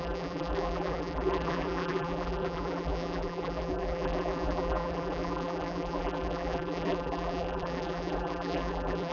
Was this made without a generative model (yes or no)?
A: no